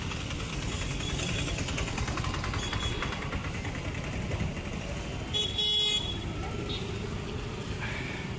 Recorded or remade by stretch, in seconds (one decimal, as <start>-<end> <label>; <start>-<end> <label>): 0.0-0.5 recorded; 0.5-2.2 remade; 2.2-8.4 recorded